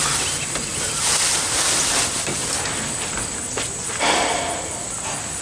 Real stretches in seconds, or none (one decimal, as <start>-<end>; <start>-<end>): 0.0-0.7; 3.9-5.4